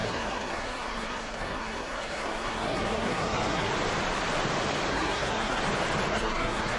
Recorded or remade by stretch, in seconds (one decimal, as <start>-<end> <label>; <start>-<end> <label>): 0.0-3.7 remade; 3.7-4.9 recorded; 4.9-5.6 remade; 5.6-6.1 recorded; 6.1-6.8 remade